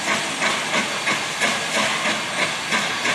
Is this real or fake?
real